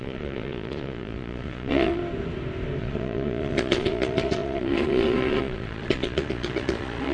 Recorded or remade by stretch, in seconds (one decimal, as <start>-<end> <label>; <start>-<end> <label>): 0.0-2.0 remade; 2.0-2.8 recorded; 2.8-7.1 remade